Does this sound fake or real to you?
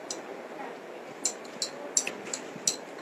real